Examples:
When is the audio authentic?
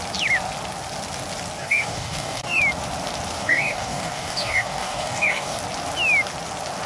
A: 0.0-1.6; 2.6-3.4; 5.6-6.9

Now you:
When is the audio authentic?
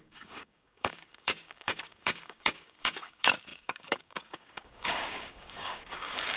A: none